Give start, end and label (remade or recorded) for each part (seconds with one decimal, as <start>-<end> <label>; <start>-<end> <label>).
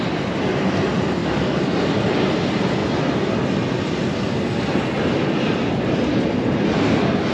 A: 0.0-1.2 recorded; 1.2-1.8 remade; 1.8-7.3 recorded